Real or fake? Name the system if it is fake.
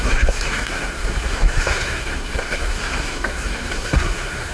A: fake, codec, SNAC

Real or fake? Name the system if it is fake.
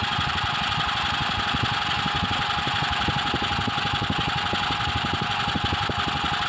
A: real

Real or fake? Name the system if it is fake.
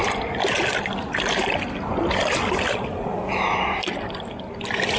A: real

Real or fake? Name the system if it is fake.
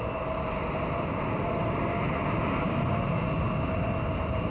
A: real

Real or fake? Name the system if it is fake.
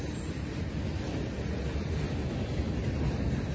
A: real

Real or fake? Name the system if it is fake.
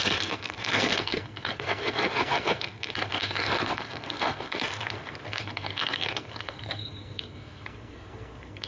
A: fake, codec, SNAC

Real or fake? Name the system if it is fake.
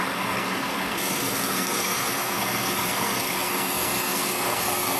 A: fake, codec, SNAC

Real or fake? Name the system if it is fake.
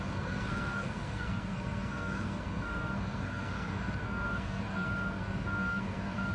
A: fake, codec, SNAC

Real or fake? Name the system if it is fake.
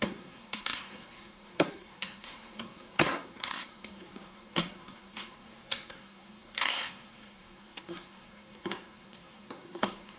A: fake, codec, SNAC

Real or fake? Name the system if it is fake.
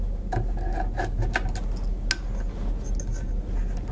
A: real